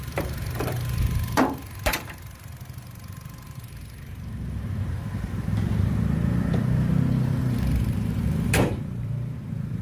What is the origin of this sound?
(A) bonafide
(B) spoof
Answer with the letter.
B